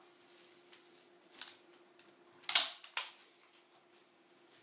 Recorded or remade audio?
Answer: recorded